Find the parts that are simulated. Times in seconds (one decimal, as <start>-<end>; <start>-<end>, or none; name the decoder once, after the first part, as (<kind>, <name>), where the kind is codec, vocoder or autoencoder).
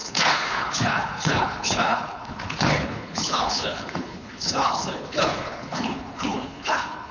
0.0-7.1 (codec, HILCodec)